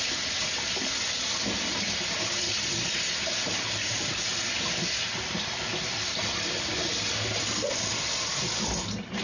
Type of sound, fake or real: real